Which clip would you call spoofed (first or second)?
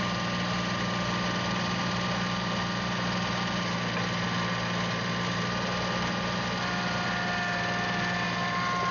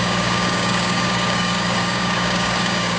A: second